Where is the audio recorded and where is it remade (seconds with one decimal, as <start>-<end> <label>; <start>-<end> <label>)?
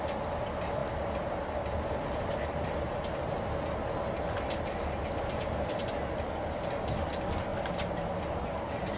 0.0-7.5 recorded; 7.5-8.2 remade; 8.2-9.0 recorded